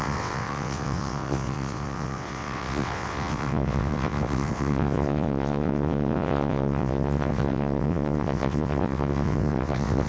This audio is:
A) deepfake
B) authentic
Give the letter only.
A